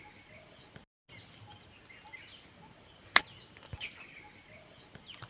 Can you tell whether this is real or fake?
real